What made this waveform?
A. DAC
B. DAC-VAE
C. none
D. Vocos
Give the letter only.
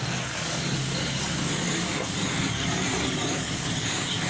A